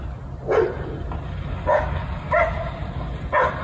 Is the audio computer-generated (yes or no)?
yes